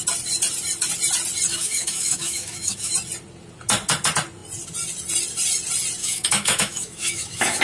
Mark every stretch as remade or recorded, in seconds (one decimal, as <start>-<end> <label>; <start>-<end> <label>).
0.0-1.5 recorded; 1.5-2.9 remade; 2.9-6.0 recorded; 6.0-7.6 remade